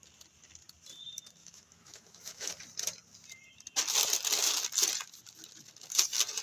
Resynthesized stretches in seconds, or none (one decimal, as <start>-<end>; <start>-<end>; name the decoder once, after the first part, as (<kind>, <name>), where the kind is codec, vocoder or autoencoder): 1.4-2.5 (autoencoder, DAC-VAE)